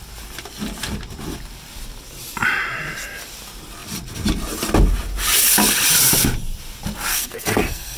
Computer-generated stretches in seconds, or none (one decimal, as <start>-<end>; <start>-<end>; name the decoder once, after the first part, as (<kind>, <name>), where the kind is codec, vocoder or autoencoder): 7.1-8.0 (codec, SNAC)